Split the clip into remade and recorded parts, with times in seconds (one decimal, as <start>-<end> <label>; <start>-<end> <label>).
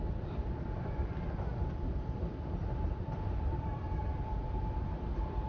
0.0-4.0 remade; 4.0-5.5 recorded